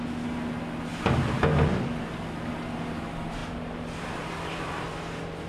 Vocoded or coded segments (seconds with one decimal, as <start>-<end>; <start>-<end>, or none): 0.9-1.4